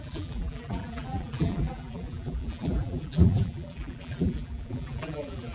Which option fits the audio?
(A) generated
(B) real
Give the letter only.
A